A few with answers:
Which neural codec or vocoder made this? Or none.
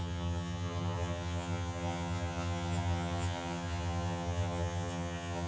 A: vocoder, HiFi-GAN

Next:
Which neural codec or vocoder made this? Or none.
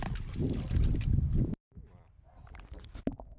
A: none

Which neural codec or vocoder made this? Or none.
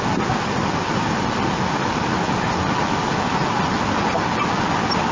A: none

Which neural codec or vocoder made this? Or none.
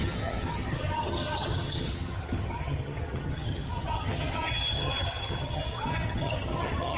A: vocoder, HiFi-GAN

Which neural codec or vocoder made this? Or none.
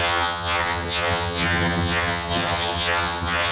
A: vocoder, HiFi-GAN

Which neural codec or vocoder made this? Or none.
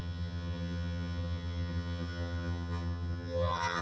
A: vocoder, HiFi-GAN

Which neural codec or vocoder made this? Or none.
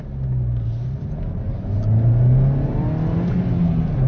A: none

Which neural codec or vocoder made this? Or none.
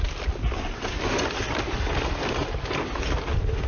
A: none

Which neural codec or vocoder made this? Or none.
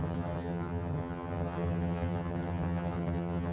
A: vocoder, HiFi-GAN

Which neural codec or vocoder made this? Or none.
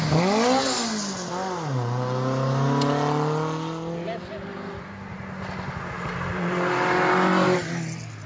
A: none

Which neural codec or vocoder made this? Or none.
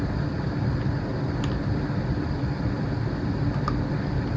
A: none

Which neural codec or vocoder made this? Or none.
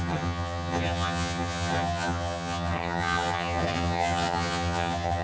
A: vocoder, HiFi-GAN